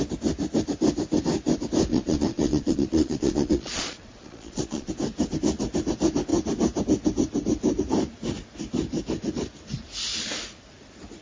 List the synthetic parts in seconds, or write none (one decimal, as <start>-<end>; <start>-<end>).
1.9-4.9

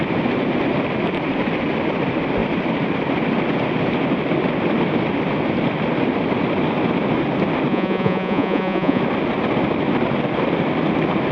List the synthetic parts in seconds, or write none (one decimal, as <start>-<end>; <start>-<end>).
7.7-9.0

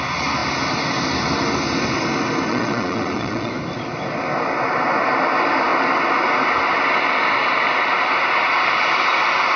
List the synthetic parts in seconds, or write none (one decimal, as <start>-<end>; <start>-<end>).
2.5-3.5

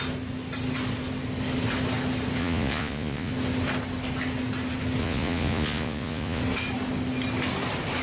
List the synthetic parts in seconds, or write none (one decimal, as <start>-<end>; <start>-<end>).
2.4-3.3; 5.0-6.4